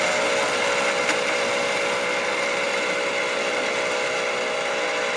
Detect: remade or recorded recorded